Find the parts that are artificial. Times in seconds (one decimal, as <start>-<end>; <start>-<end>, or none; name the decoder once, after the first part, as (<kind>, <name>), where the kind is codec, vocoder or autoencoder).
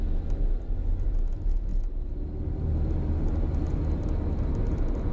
none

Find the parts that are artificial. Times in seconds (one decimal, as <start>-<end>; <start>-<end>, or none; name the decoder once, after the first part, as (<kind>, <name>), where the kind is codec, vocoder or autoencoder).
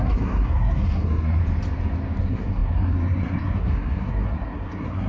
0.0-1.4 (codec, SNAC); 2.2-5.1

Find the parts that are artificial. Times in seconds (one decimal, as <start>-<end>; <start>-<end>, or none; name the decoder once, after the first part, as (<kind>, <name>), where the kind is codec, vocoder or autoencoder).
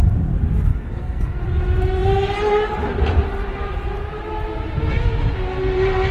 0.7-1.4 (codec, SNAC)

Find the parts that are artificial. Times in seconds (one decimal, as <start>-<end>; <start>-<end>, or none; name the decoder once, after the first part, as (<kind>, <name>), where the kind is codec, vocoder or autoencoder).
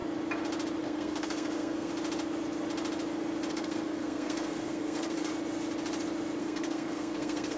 0.8-1.9 (codec, SNAC); 3.5-5.3; 6.4-7.6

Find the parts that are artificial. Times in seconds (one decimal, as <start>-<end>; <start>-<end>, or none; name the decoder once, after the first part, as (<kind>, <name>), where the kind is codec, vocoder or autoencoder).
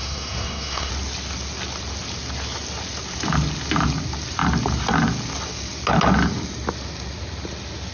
0.0-0.9 (codec, SNAC)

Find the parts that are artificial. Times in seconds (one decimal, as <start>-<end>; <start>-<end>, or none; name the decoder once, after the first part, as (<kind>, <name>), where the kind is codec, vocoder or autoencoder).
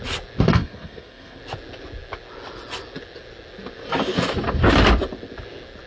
0.5-1.4 (codec, SNAC)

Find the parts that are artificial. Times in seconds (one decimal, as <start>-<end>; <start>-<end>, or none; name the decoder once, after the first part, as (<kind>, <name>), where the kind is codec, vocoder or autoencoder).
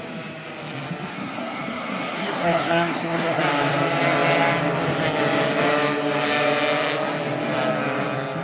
1.1-3.4 (codec, SNAC)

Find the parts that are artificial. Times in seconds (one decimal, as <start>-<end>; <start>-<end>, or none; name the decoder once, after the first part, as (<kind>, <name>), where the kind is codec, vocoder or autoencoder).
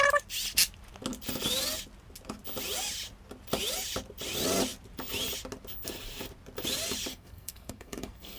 7.1-8.4 (codec, SNAC)